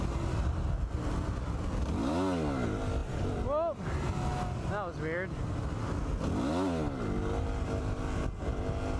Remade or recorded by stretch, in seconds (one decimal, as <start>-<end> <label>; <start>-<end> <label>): 0.0-9.0 recorded